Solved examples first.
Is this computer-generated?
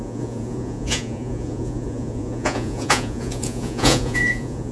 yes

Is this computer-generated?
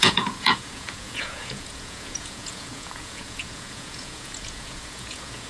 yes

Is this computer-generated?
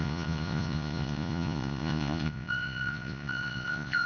yes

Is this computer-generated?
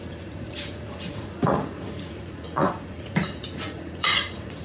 yes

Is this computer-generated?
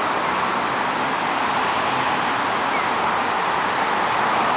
no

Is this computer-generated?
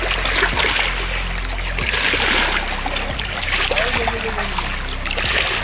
no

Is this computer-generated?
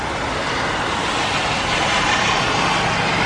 no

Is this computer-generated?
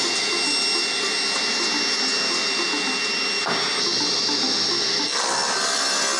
no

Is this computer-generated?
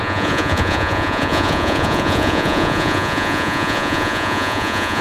yes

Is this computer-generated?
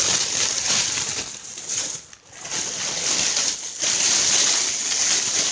no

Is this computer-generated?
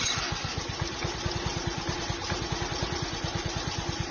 no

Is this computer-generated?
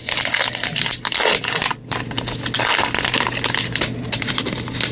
no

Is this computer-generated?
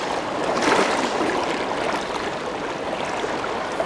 no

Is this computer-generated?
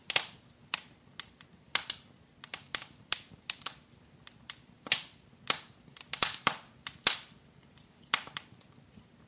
no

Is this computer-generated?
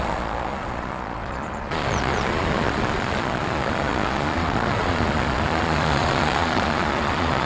yes